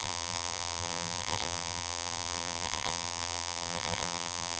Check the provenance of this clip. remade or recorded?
remade